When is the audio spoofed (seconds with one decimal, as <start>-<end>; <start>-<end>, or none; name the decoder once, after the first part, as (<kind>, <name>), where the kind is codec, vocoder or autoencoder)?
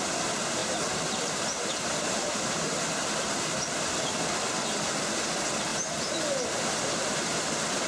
0.6-3.8 (vocoder, BigVGAN v2); 5.7-7.3